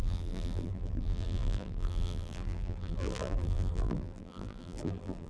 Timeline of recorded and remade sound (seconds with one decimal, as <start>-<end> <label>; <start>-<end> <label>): 0.0-5.3 remade